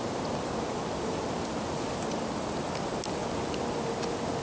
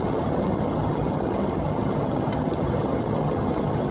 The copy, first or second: second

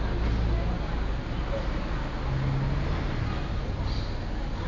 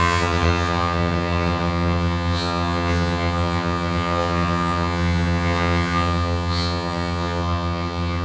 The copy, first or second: second